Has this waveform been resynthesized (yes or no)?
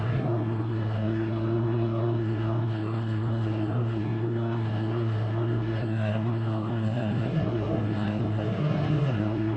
yes